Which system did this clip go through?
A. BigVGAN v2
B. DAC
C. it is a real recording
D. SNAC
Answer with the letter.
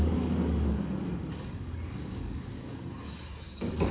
B